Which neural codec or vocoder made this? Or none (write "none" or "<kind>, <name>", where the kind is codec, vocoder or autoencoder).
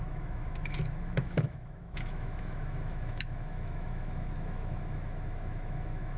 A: autoencoder, DAC-VAE